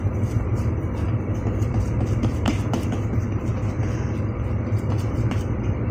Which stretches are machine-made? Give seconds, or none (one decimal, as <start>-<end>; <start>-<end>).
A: 0.0-5.9